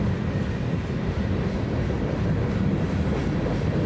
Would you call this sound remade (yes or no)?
no